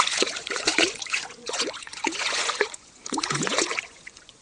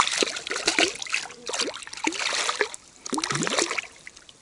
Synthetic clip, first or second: first